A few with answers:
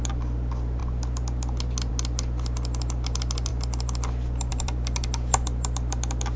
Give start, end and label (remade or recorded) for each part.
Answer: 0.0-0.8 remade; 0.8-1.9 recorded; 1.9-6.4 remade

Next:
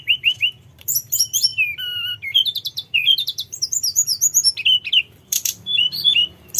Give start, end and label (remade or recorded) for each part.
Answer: 0.0-1.5 remade; 1.5-2.3 recorded; 2.3-4.1 remade; 4.1-5.2 recorded; 5.2-6.6 remade

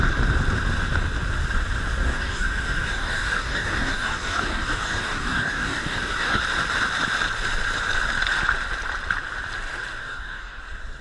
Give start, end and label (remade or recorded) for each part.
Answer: 0.0-2.0 recorded; 2.0-6.4 remade; 6.4-10.0 recorded; 10.0-10.6 remade; 10.6-11.0 recorded